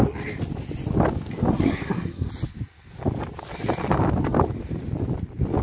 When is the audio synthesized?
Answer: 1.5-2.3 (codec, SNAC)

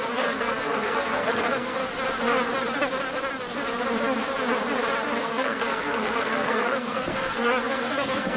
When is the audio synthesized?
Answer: 0.0-1.8 (codec, SNAC); 5.2-8.4

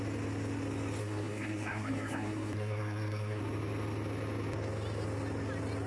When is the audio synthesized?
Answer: 1.0-3.4 (codec, SNAC)

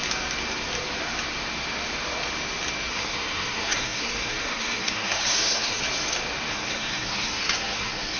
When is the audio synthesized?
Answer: 2.9-5.8 (codec, SNAC); 6.5-8.2

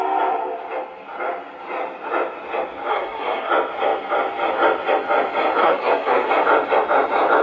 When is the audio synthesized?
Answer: 2.9-3.5 (codec, SNAC); 5.6-6.3

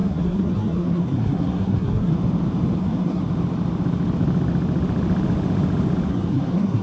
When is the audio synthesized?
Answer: 0.0-2.1 (codec, SNAC); 2.8-3.2; 6.1-6.8